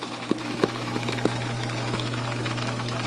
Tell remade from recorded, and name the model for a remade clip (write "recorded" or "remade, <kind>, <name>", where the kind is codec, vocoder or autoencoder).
remade, autoencoder, DAC-VAE